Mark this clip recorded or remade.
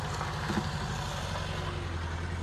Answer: recorded